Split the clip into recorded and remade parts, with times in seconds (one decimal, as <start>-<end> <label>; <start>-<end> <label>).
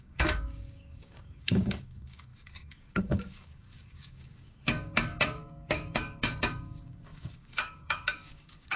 0.0-8.8 remade